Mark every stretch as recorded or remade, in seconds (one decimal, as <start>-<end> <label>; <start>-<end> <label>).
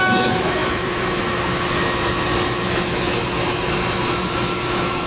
0.0-5.1 remade